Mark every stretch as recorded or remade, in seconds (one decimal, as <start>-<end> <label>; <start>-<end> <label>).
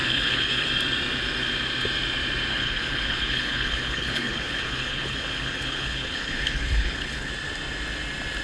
0.0-0.7 remade; 0.7-2.5 recorded; 2.5-7.3 remade; 7.3-8.4 recorded